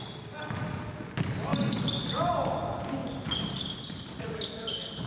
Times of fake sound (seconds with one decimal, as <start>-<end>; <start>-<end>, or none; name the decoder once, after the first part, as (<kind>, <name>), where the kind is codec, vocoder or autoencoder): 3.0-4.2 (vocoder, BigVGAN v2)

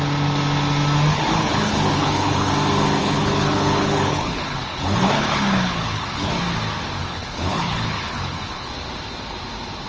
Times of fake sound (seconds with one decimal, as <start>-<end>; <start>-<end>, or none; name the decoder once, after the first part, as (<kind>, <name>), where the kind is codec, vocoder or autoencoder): 1.1-2.5 (codec, HILCodec); 3.0-6.4; 7.0-8.7

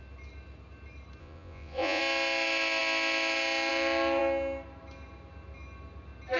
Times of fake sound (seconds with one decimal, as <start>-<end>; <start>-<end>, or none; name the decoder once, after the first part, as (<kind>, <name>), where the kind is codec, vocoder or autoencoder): 1.2-2.0 (vocoder, Vocos)

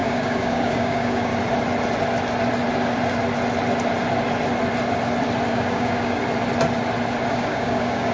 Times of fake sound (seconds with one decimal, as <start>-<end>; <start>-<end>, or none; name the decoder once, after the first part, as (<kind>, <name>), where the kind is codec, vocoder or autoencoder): 0.0-1.3 (codec, DAC); 5.5-6.2; 7.3-8.1

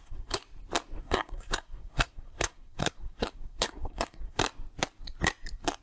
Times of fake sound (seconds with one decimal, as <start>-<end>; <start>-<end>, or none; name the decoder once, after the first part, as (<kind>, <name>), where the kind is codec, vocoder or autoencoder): 0.0-0.4 (codec, SNAC); 1.0-4.4

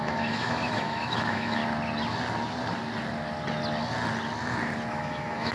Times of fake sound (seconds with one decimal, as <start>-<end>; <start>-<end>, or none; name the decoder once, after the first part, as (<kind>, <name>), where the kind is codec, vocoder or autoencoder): 0.0-1.6 (autoencoder, DAC-VAE); 4.9-5.5